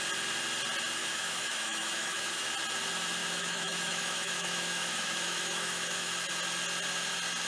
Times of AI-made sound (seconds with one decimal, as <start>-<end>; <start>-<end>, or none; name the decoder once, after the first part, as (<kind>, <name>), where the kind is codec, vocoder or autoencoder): 1.0-2.5 (autoencoder, DAC-VAE); 3.2-6.1